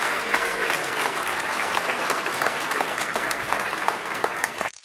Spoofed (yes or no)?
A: yes